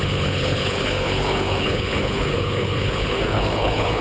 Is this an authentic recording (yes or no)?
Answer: no